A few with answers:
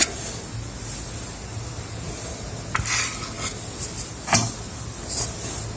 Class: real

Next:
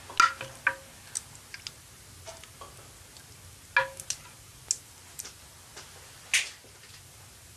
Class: real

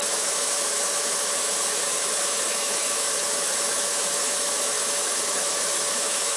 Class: fake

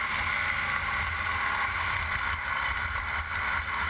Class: real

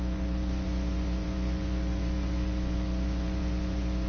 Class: fake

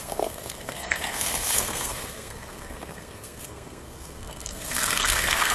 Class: fake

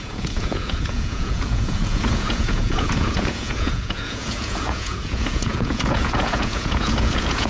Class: fake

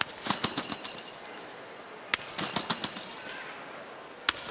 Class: real